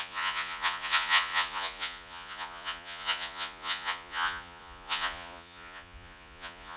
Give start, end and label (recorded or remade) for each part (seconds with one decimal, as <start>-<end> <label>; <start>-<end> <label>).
0.0-6.8 remade